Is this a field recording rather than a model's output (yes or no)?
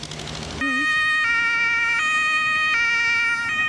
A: yes